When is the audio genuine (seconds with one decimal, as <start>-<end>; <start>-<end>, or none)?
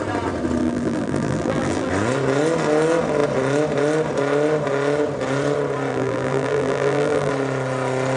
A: 0.0-0.6; 1.9-5.9; 7.3-8.2